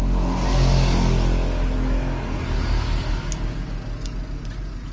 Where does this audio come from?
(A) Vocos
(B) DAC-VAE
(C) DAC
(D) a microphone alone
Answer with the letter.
D